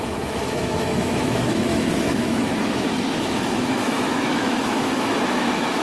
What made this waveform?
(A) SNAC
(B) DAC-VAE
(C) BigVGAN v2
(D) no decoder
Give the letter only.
B